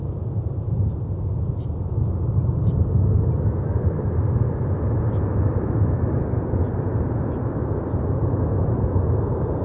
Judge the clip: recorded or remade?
recorded